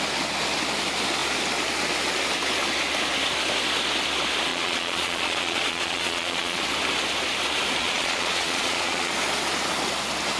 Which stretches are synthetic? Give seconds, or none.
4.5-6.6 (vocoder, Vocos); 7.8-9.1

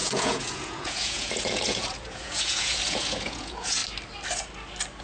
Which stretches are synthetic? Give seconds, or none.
0.0-3.8 (vocoder, Vocos)

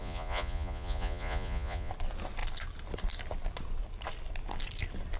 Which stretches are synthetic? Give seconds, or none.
0.0-1.9 (vocoder, Vocos)

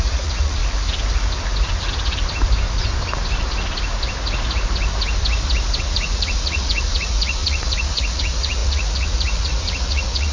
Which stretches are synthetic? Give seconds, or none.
0.0-0.6 (vocoder, Vocos); 5.8-10.3

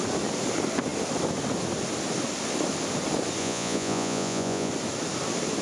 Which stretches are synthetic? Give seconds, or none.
3.4-4.7 (vocoder, Vocos)

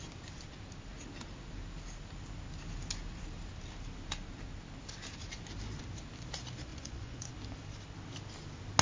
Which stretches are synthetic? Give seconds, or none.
6.7-7.3 (vocoder, Vocos)